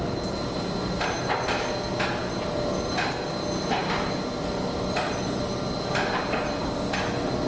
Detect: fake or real real